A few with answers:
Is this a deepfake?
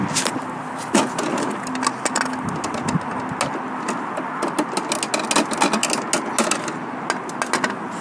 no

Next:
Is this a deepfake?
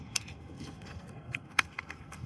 yes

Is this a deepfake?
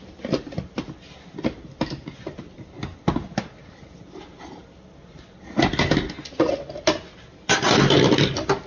no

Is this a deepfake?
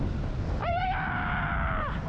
no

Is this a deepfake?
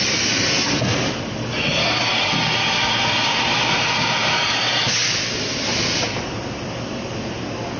no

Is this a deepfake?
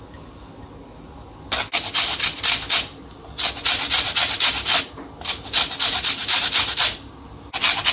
no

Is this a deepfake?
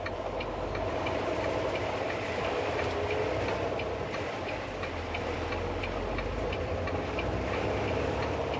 no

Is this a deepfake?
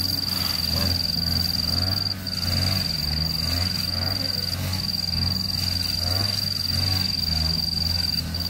no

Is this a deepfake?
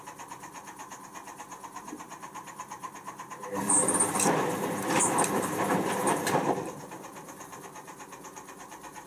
yes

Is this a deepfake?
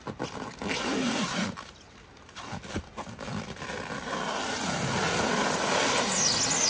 no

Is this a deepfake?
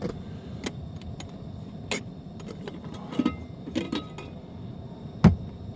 no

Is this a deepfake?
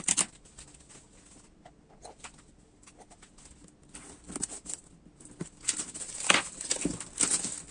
no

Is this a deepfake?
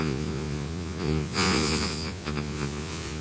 yes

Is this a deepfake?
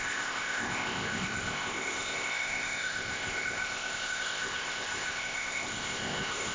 yes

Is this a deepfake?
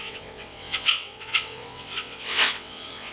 yes